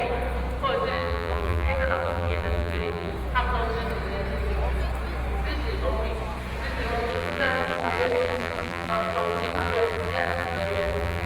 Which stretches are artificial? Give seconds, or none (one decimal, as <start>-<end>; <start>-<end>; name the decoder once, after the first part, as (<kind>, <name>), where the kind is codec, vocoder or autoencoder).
0.9-3.1 (vocoder, BigVGAN v2); 7.1-11.3